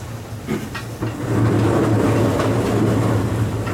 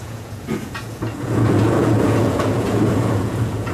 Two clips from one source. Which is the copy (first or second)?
second